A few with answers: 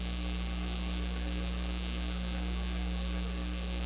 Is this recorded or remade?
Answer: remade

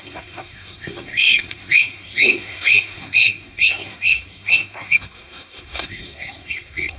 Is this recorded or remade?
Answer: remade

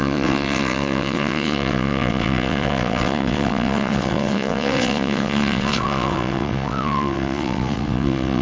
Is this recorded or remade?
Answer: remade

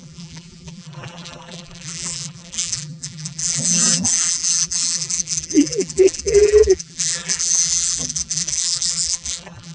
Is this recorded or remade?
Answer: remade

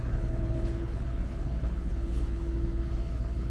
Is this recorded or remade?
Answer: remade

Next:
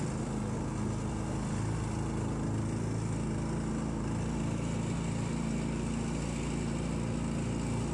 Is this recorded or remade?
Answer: recorded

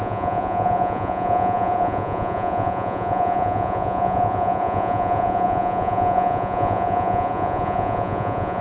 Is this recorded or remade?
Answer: remade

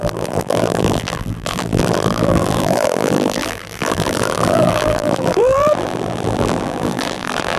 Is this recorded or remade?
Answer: remade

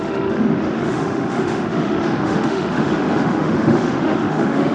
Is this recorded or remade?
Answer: remade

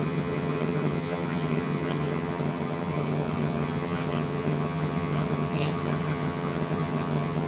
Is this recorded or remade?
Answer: remade